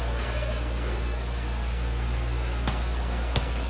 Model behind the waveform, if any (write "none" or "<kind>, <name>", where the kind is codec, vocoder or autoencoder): codec, SNAC